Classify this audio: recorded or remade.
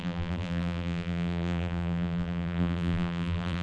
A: remade